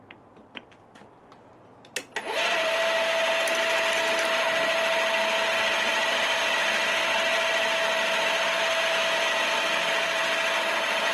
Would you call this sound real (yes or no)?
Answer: yes